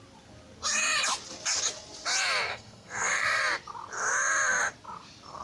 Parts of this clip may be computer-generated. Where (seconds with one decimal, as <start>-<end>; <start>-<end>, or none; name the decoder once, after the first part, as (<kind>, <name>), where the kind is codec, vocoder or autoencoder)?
2.5-3.4 (codec, SNAC)